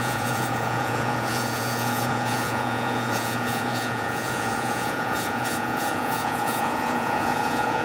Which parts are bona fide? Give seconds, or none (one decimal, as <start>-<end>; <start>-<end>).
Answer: none